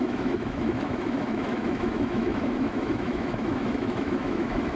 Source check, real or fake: fake